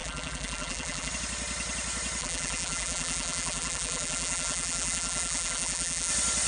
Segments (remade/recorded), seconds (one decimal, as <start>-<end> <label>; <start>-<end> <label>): 0.0-1.1 remade; 1.1-2.2 recorded; 2.2-6.1 remade; 6.1-6.5 recorded

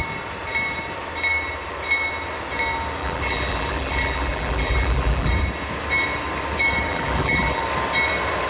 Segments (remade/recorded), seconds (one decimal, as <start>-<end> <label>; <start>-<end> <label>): 0.0-3.0 recorded; 3.0-5.3 remade; 5.3-6.9 recorded; 6.9-7.6 remade; 7.6-8.5 recorded

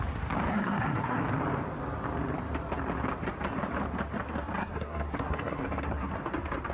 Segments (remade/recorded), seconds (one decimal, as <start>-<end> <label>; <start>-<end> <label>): 0.0-0.5 recorded; 0.5-1.2 remade; 1.2-4.6 recorded; 4.6-6.1 remade; 6.1-6.7 recorded